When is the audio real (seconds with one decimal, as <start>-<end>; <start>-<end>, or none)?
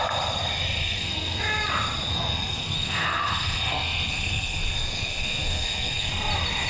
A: 0.0-0.8; 1.4-2.1; 6.1-6.7